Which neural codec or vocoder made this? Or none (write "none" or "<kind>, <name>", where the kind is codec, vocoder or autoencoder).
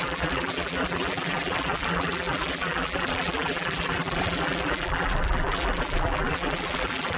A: vocoder, BigVGAN v2